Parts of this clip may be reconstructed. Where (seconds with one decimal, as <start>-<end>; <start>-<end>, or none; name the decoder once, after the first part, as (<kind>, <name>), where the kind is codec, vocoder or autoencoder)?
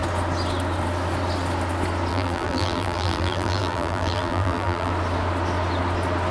2.1-4.9 (vocoder, BigVGAN v2)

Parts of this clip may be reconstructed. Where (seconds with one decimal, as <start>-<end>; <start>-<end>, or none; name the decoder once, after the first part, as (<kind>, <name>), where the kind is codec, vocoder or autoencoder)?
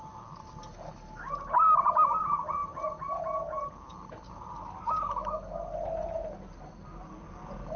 none